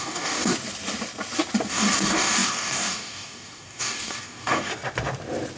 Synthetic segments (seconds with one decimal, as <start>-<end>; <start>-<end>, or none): 0.0-0.5; 1.7-4.7